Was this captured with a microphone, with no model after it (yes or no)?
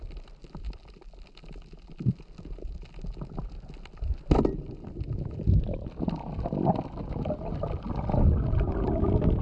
yes